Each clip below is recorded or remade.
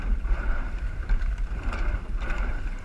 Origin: remade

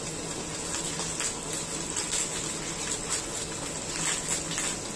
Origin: recorded